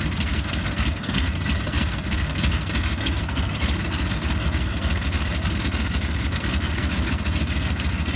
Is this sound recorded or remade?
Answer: remade